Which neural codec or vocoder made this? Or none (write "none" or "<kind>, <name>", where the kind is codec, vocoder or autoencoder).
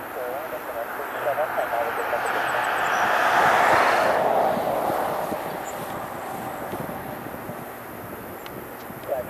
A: none